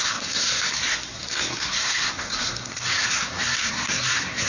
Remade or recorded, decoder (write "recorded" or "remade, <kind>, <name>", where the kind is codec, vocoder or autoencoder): remade, codec, SNAC